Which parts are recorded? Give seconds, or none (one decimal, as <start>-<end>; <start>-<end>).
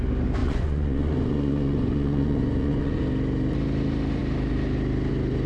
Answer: 0.0-0.4; 3.0-5.5